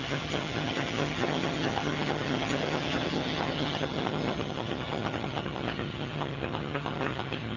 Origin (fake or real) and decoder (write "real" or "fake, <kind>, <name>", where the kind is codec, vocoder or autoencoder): fake, vocoder, HiFi-GAN